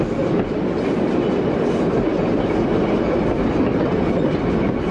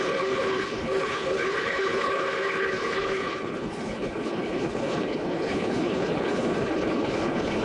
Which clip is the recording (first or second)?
first